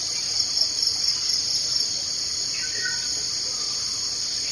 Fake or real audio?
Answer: real